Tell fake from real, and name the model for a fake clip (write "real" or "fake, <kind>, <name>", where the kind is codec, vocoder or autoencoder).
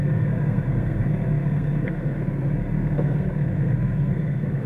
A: fake, codec, SNAC